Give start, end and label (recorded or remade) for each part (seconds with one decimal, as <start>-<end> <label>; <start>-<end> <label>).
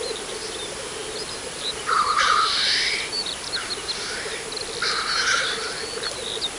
0.0-6.6 recorded